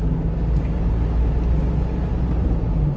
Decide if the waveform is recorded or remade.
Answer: recorded